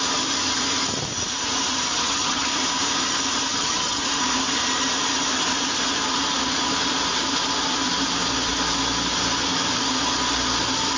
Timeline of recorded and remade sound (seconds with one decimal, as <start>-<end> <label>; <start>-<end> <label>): 0.0-1.9 recorded; 1.9-2.5 remade; 2.5-3.5 recorded; 3.5-4.0 remade; 4.0-11.0 recorded